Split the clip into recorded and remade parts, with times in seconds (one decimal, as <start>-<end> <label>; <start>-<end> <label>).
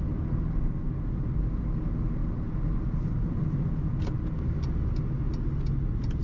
0.0-6.2 recorded